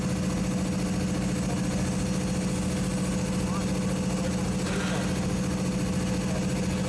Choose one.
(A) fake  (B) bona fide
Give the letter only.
B